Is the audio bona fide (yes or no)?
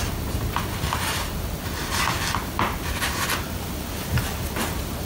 yes